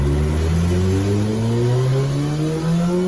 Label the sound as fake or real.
real